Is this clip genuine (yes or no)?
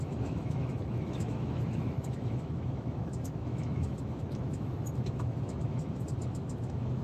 no